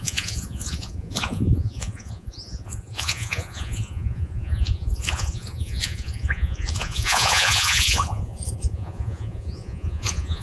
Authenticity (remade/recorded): remade